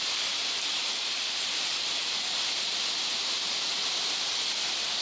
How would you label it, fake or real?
fake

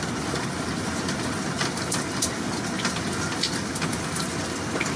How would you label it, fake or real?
real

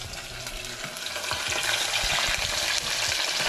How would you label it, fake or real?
real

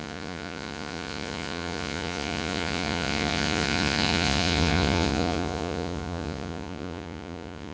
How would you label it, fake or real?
fake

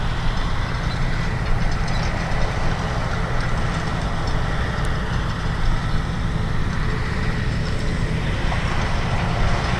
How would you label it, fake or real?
real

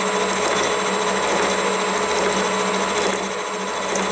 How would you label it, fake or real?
real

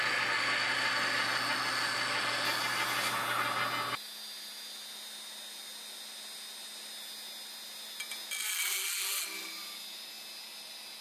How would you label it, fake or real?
real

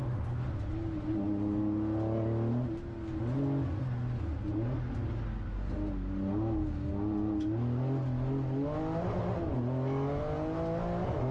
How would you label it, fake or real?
real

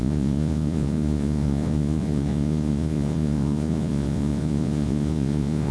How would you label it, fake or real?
fake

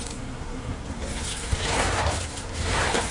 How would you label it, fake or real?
fake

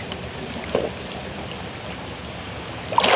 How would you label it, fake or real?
real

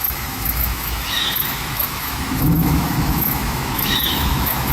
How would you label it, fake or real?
fake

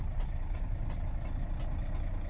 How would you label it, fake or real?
real